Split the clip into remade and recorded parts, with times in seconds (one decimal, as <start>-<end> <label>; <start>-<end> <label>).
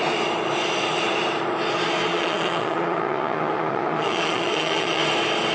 0.0-2.1 recorded; 2.1-5.0 remade; 5.0-5.5 recorded